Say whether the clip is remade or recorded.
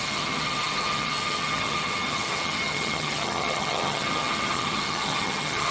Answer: remade